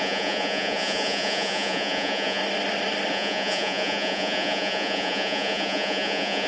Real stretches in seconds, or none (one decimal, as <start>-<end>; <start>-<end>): 2.4-3.1